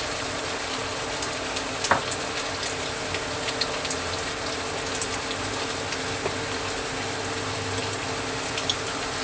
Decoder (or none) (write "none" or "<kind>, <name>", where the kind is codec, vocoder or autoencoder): none